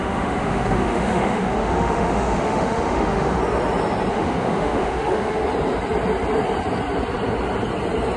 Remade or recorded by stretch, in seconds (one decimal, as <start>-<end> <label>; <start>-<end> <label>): 0.0-3.4 remade; 3.4-4.1 recorded; 4.1-5.4 remade; 5.4-8.2 recorded